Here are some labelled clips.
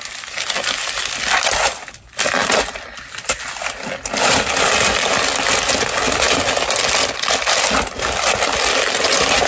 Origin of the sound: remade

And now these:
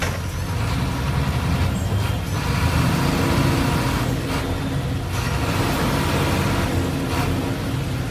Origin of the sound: recorded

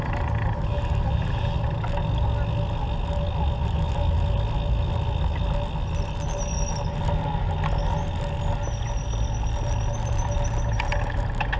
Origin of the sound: recorded